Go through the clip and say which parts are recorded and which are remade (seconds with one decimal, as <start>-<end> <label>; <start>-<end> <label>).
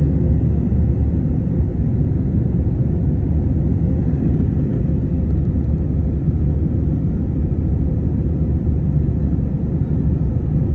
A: 0.0-1.9 recorded; 1.9-5.0 remade; 5.0-10.7 recorded